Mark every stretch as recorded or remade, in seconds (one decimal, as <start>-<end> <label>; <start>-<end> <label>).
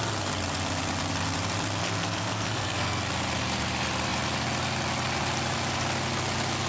0.0-1.8 recorded; 1.8-3.0 remade; 3.0-6.7 recorded